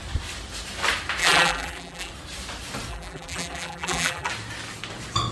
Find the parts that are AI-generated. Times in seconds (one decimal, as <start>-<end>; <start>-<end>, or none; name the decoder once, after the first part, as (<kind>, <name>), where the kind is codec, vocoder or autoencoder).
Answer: 1.2-2.1 (vocoder, BigVGAN v2); 2.9-4.3